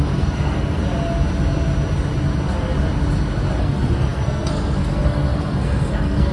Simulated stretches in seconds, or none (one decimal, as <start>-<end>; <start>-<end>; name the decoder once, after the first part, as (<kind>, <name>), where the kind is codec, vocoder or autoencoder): 0.0-0.8 (codec, SNAC); 3.6-6.3